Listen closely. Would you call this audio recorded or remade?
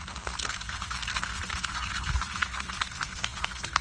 remade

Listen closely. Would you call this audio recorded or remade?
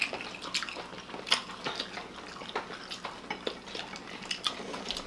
recorded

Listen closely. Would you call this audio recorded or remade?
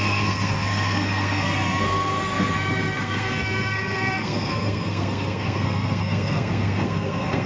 remade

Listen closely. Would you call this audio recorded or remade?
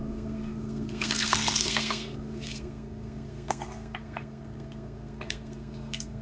remade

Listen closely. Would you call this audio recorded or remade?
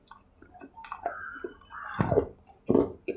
recorded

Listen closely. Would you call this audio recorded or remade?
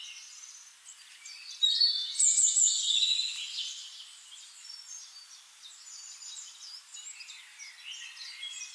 recorded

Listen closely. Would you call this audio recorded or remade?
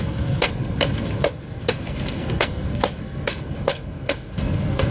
remade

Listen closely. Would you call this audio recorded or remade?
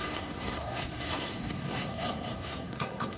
remade